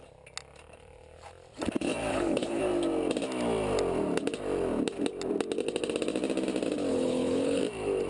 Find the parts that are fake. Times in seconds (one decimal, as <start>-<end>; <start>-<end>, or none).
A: 2.1-2.6; 6.9-7.6